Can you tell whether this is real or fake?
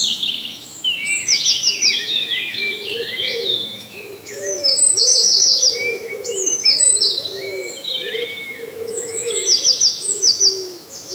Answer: fake